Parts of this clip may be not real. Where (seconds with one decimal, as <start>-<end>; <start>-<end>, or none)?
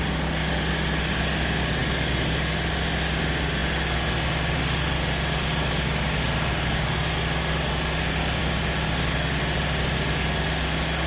none